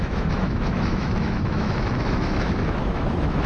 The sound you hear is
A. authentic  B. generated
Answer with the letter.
B